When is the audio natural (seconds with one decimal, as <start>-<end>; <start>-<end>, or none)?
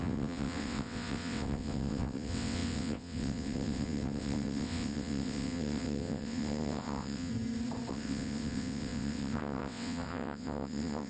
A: 7.3-7.9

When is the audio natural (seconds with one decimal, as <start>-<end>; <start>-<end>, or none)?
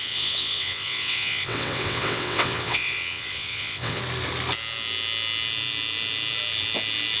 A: 4.0-7.2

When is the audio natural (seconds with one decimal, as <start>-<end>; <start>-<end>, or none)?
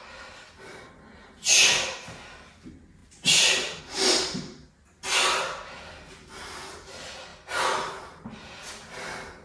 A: 0.0-9.4